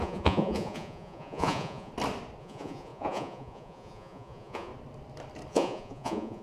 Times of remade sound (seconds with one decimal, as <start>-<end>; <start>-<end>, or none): 0.0-1.9; 2.4-4.7; 5.5-6.4